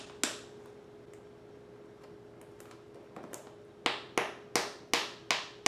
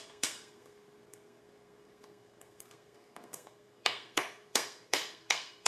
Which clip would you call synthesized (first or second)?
second